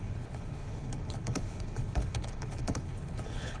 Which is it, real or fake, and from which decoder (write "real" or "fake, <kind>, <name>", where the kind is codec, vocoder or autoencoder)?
fake, codec, HILCodec